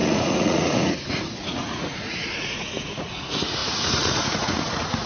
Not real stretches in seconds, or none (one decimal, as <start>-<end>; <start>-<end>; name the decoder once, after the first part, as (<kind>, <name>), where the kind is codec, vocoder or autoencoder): 0.0-5.1 (vocoder, Vocos)